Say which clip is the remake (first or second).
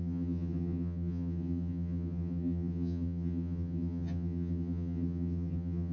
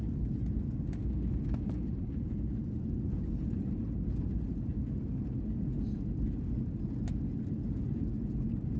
first